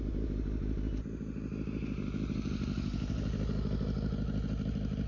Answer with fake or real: real